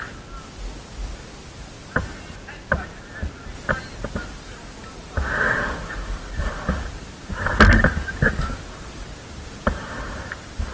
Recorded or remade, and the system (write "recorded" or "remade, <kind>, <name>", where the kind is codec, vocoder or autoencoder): recorded